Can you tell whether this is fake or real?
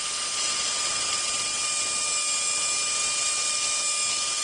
real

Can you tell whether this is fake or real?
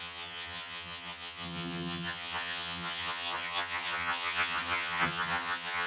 fake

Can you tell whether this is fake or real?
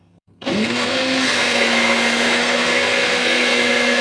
fake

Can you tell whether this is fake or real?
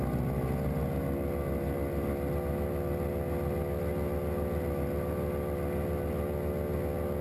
real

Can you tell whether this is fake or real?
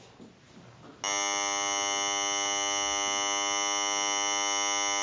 real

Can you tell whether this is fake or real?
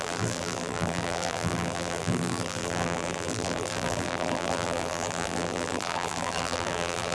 fake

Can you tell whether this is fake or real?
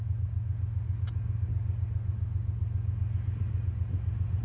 real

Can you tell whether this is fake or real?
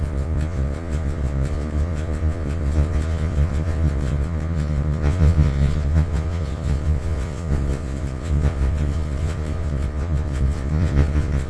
fake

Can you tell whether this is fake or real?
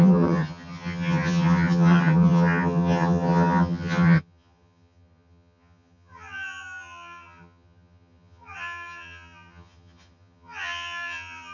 fake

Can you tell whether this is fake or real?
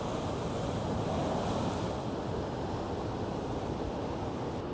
real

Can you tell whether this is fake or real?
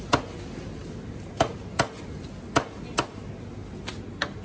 real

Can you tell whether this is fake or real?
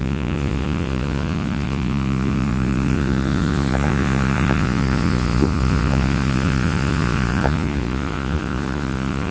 fake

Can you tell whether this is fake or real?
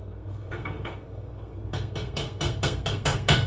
fake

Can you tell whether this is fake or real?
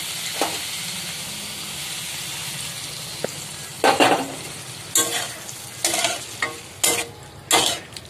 real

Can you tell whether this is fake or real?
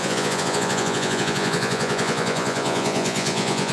fake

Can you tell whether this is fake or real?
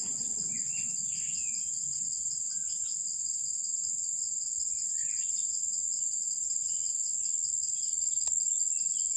real